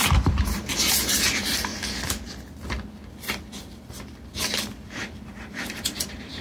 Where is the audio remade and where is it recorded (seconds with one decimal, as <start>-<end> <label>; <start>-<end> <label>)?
0.0-1.7 remade; 1.7-5.1 recorded; 5.1-6.4 remade